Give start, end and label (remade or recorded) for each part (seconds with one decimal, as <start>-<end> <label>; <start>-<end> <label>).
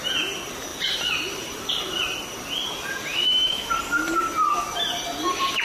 0.0-3.1 recorded; 3.1-3.7 remade; 3.7-5.6 recorded